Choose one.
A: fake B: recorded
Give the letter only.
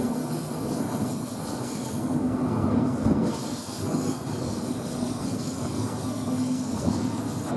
A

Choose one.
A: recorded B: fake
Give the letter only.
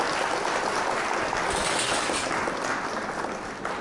A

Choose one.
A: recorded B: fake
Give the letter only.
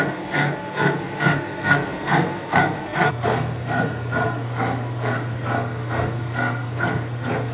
B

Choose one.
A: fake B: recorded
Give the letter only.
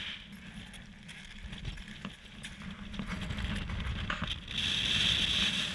B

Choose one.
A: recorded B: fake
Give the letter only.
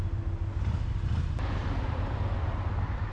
A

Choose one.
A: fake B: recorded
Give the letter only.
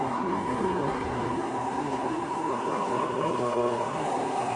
A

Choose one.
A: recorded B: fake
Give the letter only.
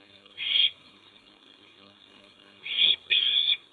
B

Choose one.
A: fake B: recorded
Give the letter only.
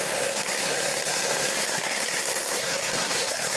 A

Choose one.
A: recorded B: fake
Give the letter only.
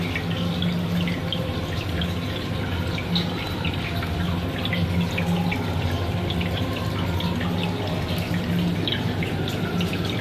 A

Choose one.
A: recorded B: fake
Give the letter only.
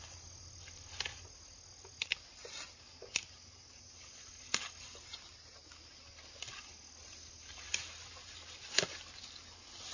A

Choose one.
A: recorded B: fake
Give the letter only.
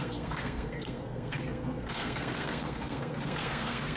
B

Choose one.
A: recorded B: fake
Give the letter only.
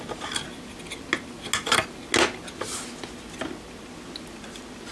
A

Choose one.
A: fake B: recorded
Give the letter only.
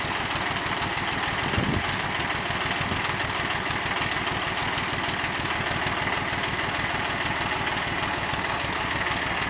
B